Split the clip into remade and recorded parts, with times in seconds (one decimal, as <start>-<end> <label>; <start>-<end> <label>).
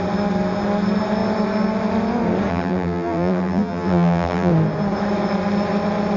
0.0-2.5 recorded; 2.5-4.5 remade; 4.5-6.2 recorded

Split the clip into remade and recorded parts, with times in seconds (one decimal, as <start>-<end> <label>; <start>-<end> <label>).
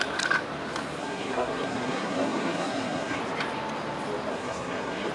0.0-1.0 recorded; 1.0-3.2 remade; 3.2-4.3 recorded; 4.3-5.1 remade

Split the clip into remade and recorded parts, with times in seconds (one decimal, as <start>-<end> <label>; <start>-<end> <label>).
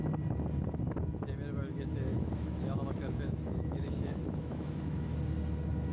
0.0-1.7 recorded; 1.7-5.2 remade; 5.2-5.9 recorded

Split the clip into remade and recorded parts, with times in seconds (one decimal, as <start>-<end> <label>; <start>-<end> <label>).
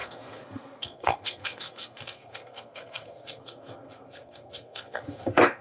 0.0-5.6 remade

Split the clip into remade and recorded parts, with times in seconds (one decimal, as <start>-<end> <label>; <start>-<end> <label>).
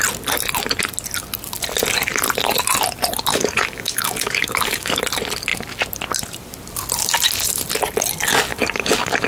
0.0-3.3 recorded; 3.3-5.0 remade; 5.0-8.5 recorded; 8.5-9.3 remade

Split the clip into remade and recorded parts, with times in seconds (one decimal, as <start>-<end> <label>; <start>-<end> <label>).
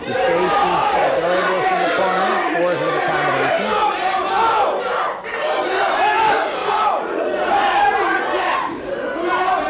0.0-6.6 recorded; 6.6-8.9 remade; 8.9-9.7 recorded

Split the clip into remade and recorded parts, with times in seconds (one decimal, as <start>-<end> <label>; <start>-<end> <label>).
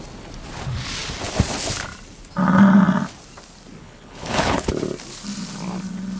0.0-3.8 recorded; 3.8-4.7 remade; 4.7-6.2 recorded